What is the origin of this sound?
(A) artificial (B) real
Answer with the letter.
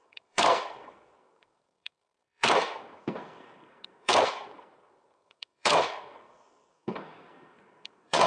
A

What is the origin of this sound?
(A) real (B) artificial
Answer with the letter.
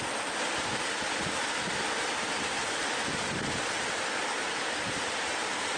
A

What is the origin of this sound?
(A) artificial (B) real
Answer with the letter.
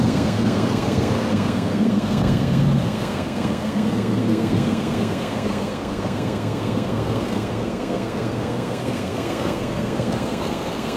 A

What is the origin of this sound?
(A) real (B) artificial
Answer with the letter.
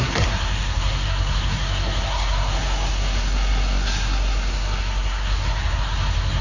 B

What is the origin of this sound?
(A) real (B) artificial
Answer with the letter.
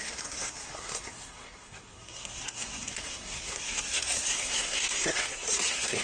B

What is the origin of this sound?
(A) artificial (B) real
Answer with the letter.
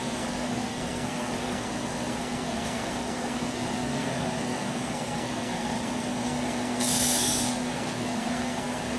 A